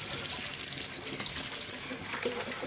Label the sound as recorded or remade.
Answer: recorded